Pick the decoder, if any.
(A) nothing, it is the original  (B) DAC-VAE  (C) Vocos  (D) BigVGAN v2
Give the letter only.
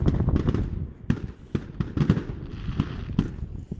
A